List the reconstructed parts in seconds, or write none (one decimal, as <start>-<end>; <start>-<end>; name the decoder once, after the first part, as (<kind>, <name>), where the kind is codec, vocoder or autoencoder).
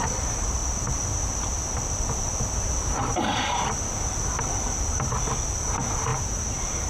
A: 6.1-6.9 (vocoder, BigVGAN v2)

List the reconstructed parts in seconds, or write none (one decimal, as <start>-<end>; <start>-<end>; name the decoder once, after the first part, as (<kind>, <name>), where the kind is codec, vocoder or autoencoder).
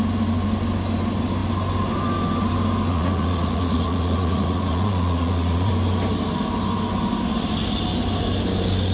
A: 2.9-5.7 (vocoder, Vocos)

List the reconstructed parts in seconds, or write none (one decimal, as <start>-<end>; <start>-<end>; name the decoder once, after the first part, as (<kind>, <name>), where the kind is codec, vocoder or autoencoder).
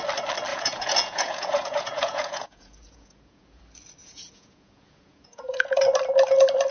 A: 0.5-3.6 (vocoder, Vocos); 4.0-5.8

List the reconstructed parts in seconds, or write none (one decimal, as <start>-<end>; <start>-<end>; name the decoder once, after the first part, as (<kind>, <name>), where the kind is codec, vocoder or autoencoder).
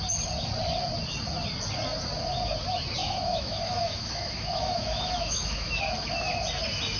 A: 3.0-5.8 (autoencoder, DAC-VAE)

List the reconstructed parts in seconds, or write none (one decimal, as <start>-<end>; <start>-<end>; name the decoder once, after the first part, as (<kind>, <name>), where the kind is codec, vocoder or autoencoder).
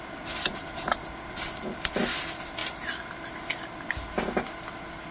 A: none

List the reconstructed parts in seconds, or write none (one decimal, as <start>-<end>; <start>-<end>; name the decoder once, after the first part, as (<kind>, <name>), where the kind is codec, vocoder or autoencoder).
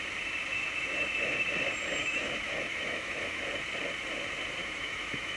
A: 2.0-3.4 (autoencoder, DAC-VAE); 4.6-5.4